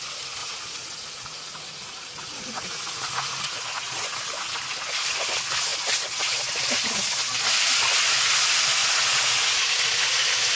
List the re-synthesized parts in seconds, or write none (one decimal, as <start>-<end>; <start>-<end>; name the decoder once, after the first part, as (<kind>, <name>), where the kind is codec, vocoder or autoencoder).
0.4-4.2 (vocoder, Vocos); 8.8-9.6